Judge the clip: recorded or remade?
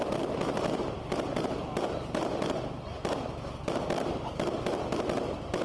recorded